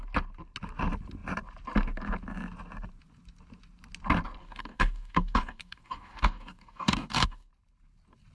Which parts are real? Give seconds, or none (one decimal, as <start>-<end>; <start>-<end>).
0.0-4.4; 7.5-8.3